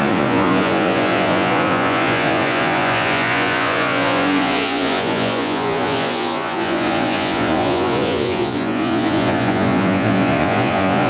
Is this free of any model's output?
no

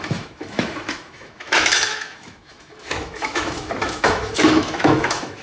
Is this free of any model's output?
no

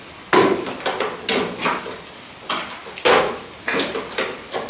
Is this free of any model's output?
yes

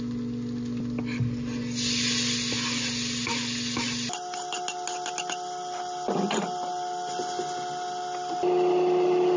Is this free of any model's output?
yes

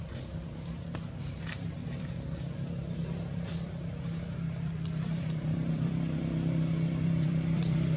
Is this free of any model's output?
no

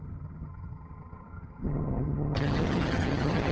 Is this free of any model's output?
no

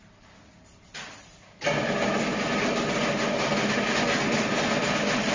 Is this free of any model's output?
yes